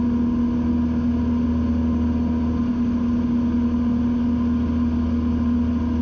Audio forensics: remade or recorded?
recorded